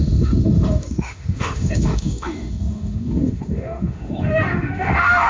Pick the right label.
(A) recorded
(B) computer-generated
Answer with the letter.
B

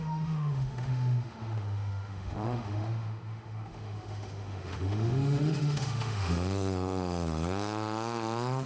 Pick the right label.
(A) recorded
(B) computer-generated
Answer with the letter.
B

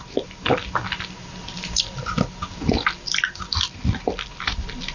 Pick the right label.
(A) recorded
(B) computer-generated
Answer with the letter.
A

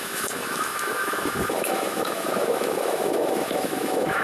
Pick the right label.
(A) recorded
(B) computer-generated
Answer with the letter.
B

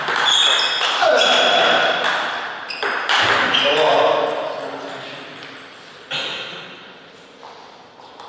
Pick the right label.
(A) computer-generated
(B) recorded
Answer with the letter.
B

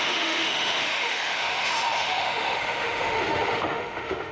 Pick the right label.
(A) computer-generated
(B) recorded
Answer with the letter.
A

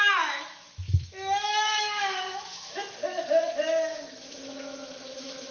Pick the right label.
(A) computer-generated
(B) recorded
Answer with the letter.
A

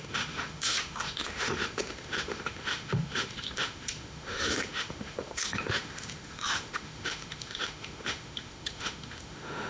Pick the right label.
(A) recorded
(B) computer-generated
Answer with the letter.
B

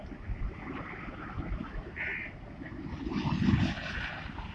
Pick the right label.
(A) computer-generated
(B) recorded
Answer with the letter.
B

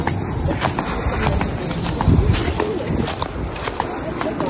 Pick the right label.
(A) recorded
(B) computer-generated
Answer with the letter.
A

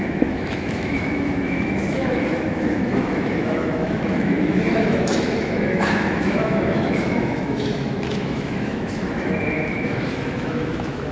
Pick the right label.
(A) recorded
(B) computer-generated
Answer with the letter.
B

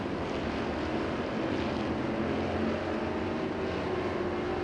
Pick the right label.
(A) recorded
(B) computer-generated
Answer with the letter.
A